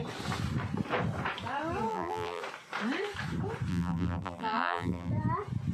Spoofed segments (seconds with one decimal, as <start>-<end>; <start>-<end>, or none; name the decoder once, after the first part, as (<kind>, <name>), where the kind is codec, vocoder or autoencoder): 1.9-2.4 (vocoder, BigVGAN v2); 3.7-5.1